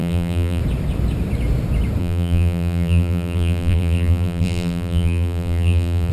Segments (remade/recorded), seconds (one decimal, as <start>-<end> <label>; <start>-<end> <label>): 0.0-0.6 remade; 0.6-2.0 recorded; 2.0-6.1 remade